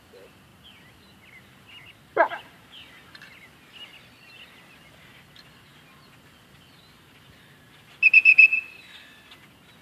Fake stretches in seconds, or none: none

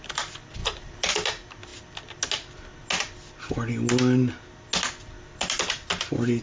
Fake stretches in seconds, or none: 0.6-1.1 (vocoder, BigVGAN v2)

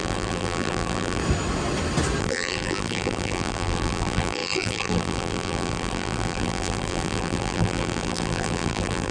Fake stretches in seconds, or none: 0.0-1.2 (vocoder, BigVGAN v2); 2.2-9.1

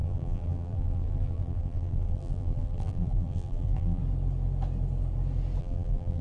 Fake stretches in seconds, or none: 0.0-4.0 (vocoder, BigVGAN v2); 5.6-6.2

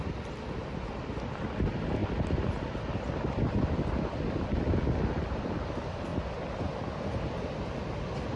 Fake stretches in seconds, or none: none